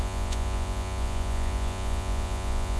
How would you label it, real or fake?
fake